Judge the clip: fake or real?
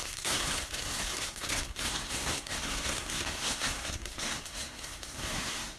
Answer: fake